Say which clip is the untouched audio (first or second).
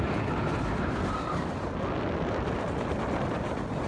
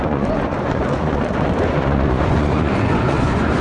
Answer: first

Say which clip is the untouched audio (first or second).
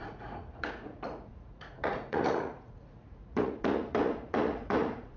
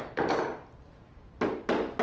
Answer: second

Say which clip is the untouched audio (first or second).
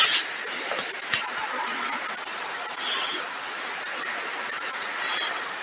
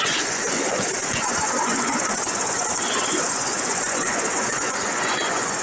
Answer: first